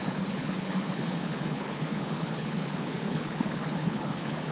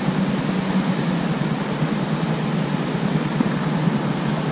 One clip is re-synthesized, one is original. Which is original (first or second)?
second